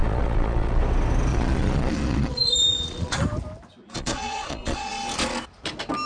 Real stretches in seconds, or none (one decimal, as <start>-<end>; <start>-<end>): 0.8-1.3; 3.2-3.8; 4.9-6.1